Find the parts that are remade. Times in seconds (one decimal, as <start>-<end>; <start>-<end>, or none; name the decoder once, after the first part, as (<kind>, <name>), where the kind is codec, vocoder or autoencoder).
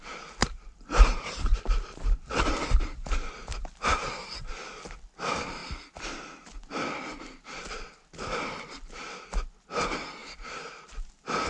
0.4-2.4 (vocoder, BigVGAN v2); 4.0-4.5